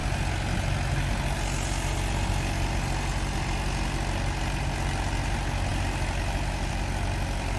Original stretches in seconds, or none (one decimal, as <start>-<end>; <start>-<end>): 0.0-7.6